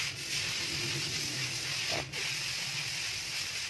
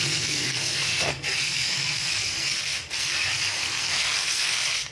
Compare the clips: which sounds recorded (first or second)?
first